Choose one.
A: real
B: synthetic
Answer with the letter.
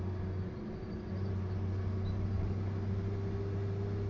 A